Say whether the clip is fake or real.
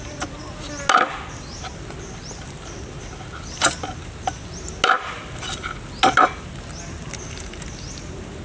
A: real